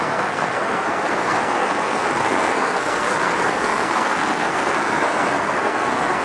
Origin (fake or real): fake